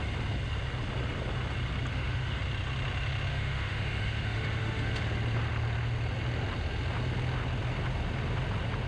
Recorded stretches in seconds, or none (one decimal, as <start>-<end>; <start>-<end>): 0.0-1.9; 2.4-3.3; 5.0-8.9